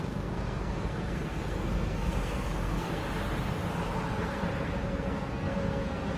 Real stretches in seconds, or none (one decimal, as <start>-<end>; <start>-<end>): 3.0-4.1